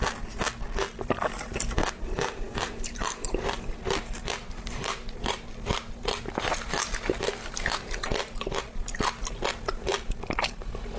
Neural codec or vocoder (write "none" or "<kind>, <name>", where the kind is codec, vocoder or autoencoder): none